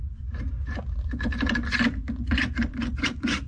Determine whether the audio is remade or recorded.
recorded